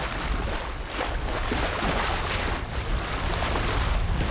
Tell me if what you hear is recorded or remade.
recorded